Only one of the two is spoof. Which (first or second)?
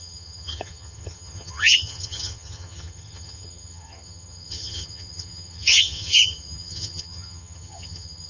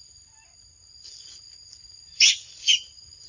first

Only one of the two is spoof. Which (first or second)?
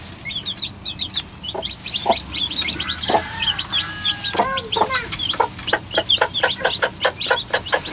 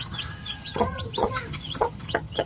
second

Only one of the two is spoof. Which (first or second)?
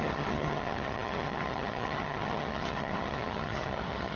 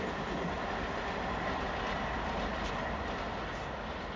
first